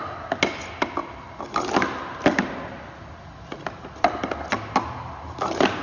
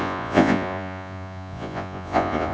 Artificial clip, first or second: second